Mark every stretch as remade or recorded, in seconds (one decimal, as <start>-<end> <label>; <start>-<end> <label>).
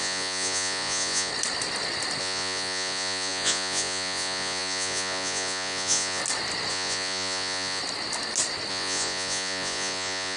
0.0-1.3 remade; 1.3-2.2 recorded; 2.2-6.2 remade; 6.2-6.7 recorded; 6.7-7.8 remade; 7.8-8.7 recorded; 8.7-10.4 remade